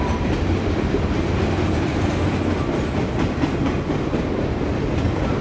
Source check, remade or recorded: recorded